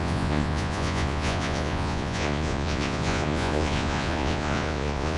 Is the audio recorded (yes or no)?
no